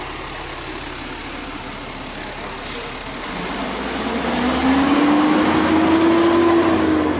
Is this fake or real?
real